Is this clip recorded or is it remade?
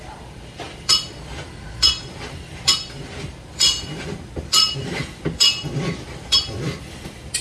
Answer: remade